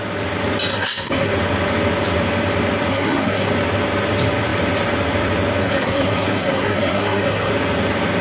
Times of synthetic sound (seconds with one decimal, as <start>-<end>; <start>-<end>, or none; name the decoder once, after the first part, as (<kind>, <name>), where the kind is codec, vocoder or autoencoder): 0.7-1.3 (codec, SNAC); 2.9-3.5; 5.6-7.5